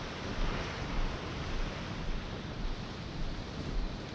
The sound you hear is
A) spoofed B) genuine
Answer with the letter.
B